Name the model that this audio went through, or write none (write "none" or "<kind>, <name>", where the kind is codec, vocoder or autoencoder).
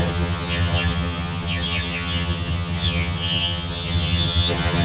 vocoder, HiFi-GAN